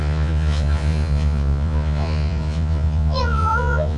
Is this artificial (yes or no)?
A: yes